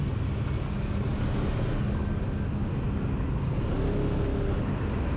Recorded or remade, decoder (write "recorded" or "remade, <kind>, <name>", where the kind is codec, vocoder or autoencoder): recorded